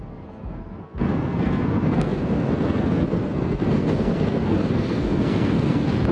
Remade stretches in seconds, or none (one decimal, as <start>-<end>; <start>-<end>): 0.0-6.1